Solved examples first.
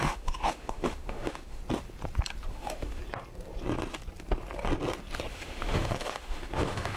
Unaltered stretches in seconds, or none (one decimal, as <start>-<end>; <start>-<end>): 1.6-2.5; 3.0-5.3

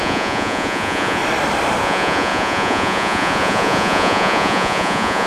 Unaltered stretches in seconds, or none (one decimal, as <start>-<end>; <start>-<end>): 1.2-1.8

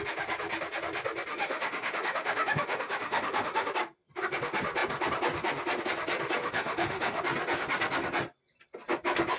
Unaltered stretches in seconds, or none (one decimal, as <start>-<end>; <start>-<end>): 0.0-1.3; 3.7-6.4; 7.2-9.4

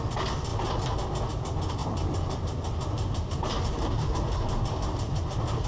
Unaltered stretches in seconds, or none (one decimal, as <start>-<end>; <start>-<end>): 0.0-1.8; 5.2-5.7